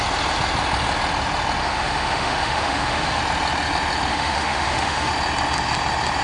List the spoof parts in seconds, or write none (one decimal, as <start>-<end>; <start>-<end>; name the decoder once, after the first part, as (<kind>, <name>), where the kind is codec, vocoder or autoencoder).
1.6-3.2 (autoencoder, DAC-VAE); 4.1-5.1